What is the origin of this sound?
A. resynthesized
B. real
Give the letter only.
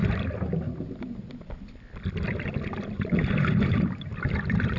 B